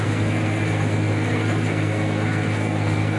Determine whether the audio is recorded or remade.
remade